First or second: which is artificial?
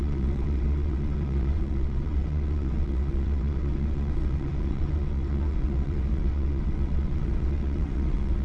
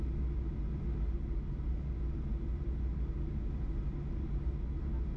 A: first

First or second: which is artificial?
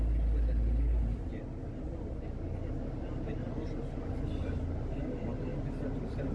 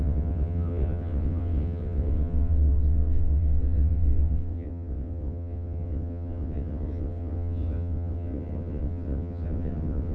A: second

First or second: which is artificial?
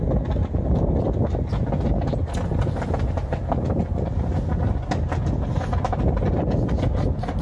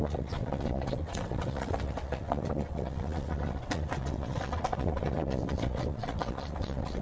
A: second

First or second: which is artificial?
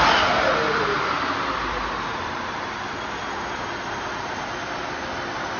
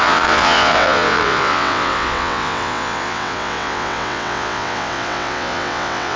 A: second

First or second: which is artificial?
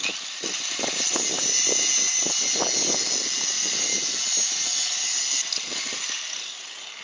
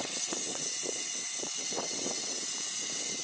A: second